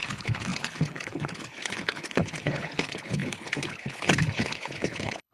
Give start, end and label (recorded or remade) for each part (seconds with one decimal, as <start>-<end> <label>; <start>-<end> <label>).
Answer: 0.0-5.3 remade